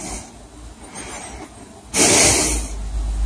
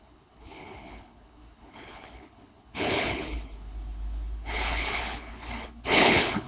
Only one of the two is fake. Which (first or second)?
second